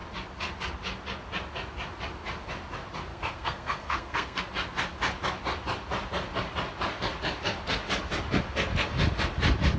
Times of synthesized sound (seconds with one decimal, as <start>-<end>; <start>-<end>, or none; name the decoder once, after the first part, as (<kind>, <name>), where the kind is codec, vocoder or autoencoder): 3.1-4.4 (codec, SNAC)